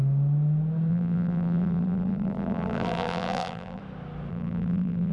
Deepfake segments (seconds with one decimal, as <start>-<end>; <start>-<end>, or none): 0.9-3.8; 4.3-5.1